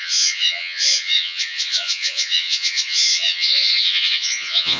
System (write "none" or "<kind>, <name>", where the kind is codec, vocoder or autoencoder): vocoder, Vocos